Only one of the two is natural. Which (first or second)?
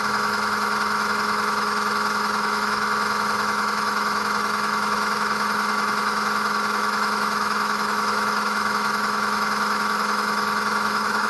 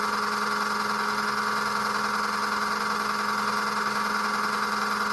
second